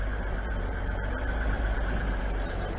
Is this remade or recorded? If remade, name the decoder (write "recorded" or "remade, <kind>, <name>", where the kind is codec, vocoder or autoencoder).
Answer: remade, vocoder, BigVGAN v2